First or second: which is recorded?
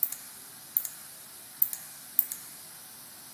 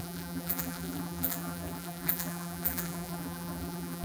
first